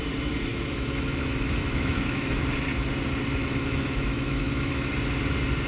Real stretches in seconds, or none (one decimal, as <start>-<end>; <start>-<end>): 0.0-0.5; 2.4-3.4; 4.9-5.7